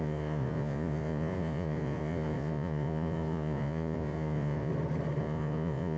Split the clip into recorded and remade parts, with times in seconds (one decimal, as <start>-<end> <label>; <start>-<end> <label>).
0.0-4.7 remade; 4.7-5.2 recorded; 5.2-6.0 remade

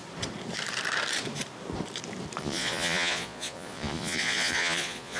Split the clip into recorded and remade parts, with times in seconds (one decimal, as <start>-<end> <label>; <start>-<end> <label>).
0.0-2.4 recorded; 2.4-5.2 remade